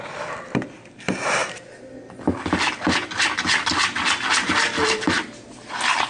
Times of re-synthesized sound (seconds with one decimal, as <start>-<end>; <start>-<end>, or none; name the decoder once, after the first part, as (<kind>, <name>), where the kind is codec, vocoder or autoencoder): none